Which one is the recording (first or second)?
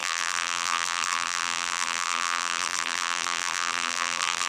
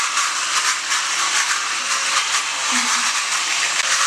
second